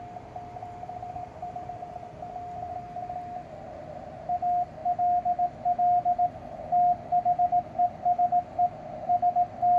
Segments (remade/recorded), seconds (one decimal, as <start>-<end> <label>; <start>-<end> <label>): 0.0-9.8 recorded